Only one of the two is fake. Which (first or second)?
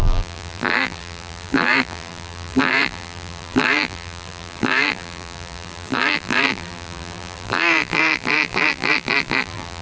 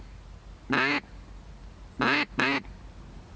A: first